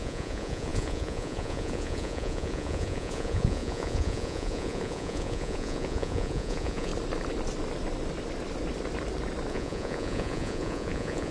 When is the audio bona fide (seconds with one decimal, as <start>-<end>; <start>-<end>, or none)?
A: 6.9-9.5